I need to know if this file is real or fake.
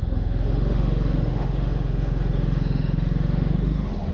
fake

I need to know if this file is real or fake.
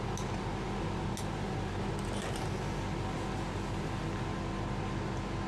real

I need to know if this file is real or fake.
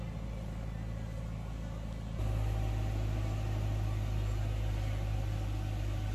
real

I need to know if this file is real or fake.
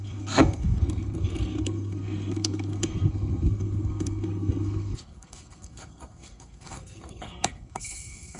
fake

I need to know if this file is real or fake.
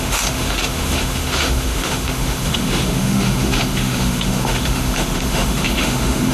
fake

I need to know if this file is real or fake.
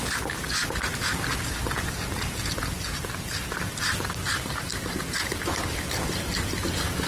real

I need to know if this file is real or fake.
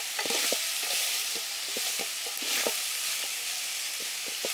real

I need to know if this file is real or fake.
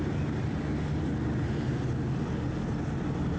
real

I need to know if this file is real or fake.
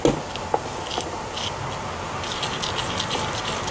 real